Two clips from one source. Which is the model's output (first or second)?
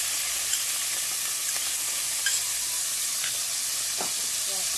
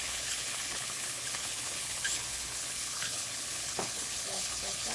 second